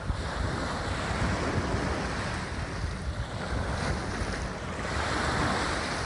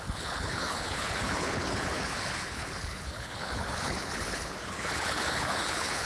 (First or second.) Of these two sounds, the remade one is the second